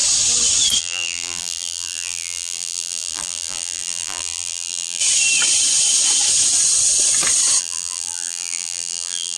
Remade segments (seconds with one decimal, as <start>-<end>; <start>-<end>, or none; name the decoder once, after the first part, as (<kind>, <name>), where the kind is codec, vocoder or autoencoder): 0.8-5.0 (vocoder, BigVGAN v2); 7.6-9.4